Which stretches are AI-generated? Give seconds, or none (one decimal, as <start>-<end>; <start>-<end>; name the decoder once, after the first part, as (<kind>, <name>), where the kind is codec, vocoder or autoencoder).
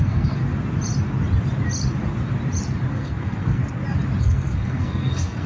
0.0-0.4 (codec, SNAC); 2.9-3.6; 4.2-5.5